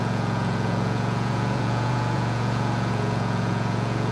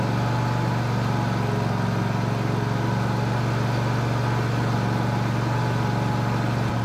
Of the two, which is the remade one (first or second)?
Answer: first